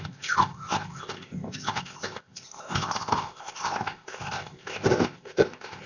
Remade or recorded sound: remade